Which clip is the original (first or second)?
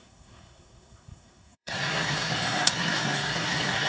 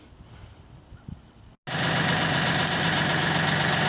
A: second